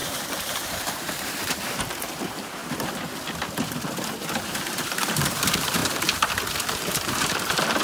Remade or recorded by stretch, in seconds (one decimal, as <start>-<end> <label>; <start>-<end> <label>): 0.0-2.6 remade; 2.6-4.4 recorded; 4.4-5.8 remade; 5.8-6.5 recorded; 6.5-7.8 remade